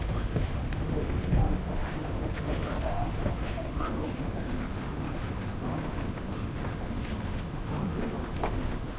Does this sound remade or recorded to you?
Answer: remade